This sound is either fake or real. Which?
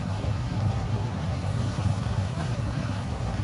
fake